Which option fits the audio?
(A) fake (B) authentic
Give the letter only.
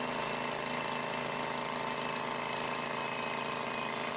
B